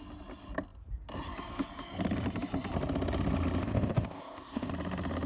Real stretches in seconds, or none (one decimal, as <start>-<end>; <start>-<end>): 0.0-3.6; 4.7-5.3